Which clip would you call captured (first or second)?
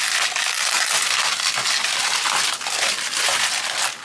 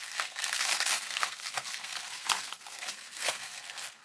first